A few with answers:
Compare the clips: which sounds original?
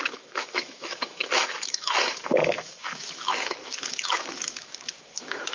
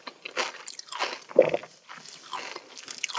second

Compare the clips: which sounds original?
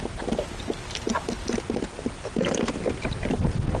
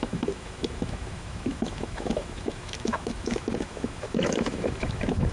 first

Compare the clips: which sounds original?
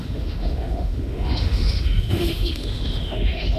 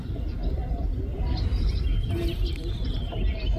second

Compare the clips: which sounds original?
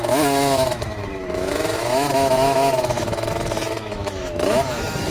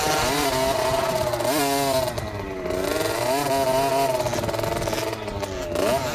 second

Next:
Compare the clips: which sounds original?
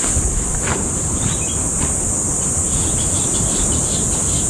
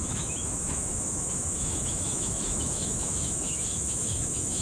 first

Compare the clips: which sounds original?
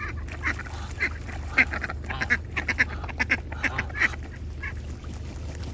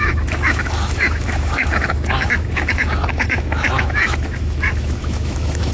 first